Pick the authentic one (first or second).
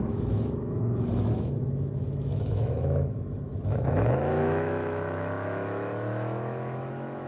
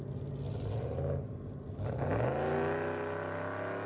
second